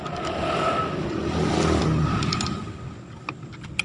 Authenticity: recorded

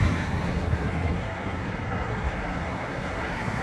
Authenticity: remade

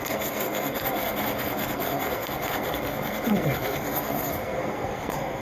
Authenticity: remade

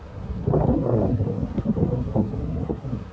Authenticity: remade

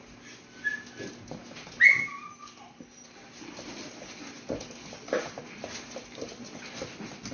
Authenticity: recorded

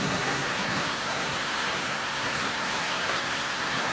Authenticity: remade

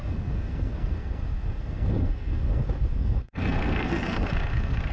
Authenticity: remade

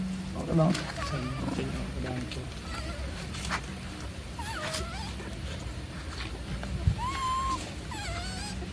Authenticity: recorded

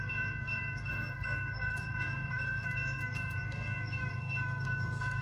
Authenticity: remade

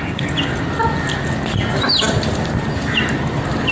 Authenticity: recorded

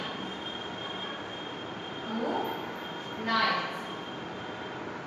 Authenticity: recorded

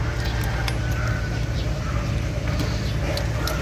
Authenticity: recorded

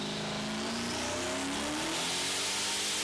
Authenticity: recorded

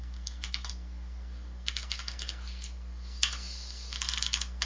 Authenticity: remade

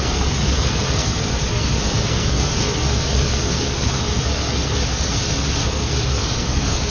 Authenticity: remade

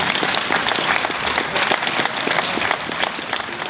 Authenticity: recorded